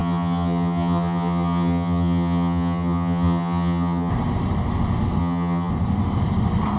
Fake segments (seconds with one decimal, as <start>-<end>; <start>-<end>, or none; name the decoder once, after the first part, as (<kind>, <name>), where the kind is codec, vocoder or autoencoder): 0.0-4.1 (vocoder, HiFi-GAN); 5.2-5.7